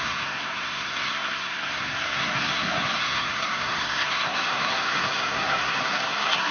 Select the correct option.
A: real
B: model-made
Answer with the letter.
B